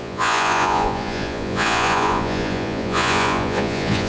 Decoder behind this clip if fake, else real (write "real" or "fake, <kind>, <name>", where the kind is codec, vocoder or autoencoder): fake, vocoder, Vocos